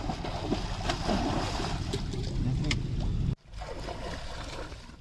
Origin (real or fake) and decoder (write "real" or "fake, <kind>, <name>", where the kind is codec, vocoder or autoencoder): real